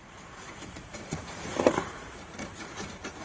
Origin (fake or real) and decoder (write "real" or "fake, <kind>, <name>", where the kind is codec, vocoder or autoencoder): fake, vocoder, Vocos